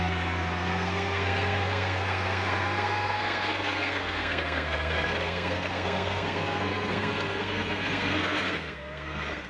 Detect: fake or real fake